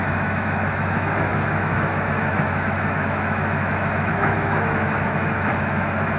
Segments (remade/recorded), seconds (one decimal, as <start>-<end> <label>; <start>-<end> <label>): 0.0-6.2 remade